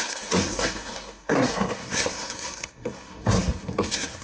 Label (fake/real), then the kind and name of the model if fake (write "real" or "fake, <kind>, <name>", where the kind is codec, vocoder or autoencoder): fake, codec, SNAC